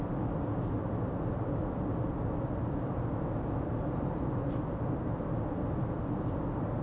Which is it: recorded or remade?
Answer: recorded